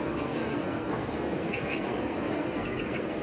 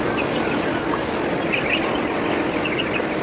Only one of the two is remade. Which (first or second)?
first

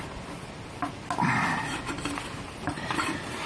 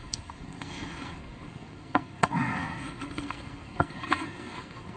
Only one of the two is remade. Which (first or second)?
second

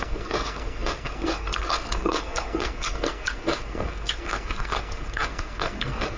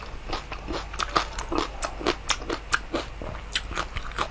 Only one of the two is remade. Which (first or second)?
first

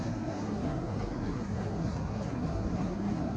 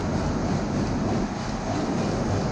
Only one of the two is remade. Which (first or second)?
first